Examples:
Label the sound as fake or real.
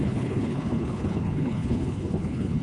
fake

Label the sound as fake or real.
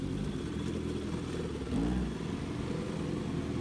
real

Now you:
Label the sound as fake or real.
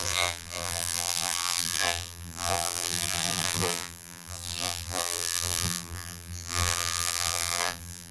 fake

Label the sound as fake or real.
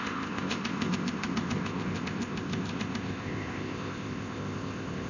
fake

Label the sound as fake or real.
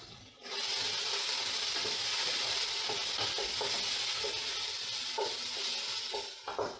real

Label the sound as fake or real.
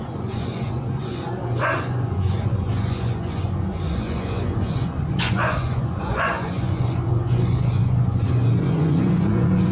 fake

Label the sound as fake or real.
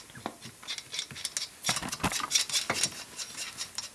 real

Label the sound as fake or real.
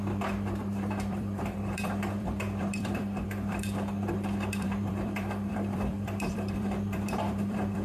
fake